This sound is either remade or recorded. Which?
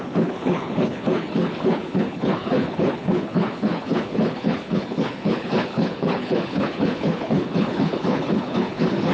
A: remade